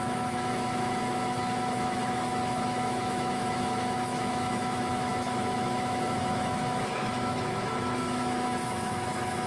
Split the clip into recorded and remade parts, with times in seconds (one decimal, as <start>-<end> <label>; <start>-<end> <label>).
0.0-9.5 remade